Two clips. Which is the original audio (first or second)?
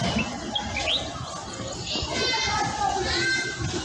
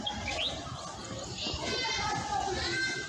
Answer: first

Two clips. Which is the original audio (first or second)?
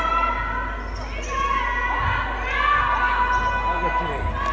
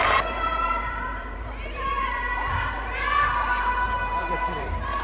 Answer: first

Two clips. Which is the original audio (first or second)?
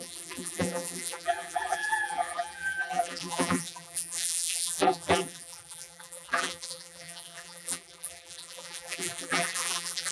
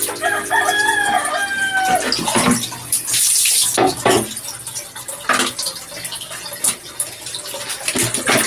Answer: second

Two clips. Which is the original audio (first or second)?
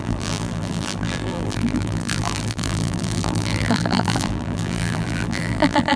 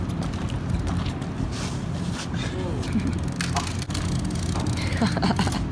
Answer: second